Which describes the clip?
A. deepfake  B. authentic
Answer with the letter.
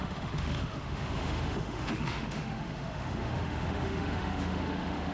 A